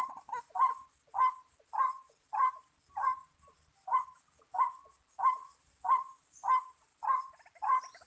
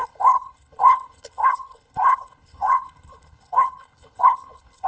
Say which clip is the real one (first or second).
first